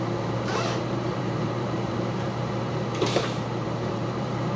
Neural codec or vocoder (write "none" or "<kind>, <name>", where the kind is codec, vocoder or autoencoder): vocoder, BigVGAN v2